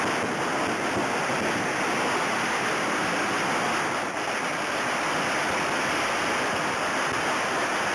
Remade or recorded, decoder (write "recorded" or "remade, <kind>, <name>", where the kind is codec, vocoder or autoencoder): recorded